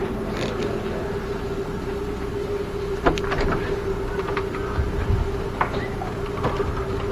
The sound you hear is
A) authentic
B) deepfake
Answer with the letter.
A